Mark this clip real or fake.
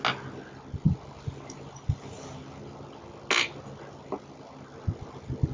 real